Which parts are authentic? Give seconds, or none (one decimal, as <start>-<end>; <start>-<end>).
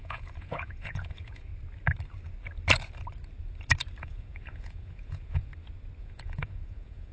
1.5-4.0; 5.5-6.0